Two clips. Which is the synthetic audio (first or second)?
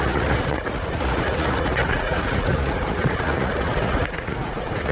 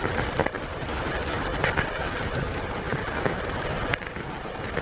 first